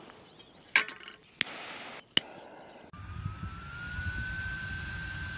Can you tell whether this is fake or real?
real